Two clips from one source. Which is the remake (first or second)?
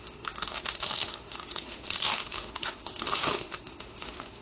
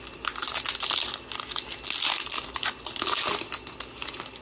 first